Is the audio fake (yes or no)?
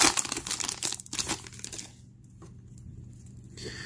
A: no